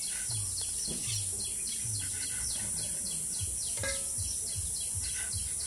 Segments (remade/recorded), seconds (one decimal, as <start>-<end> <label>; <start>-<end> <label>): 0.0-5.7 recorded